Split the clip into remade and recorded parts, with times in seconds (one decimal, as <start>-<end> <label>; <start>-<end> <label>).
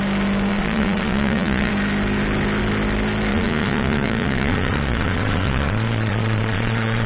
0.0-0.5 recorded; 0.5-1.7 remade; 1.7-3.3 recorded; 3.3-7.1 remade